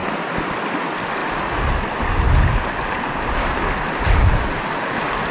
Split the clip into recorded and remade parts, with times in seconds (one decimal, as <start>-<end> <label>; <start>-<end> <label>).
0.0-5.3 recorded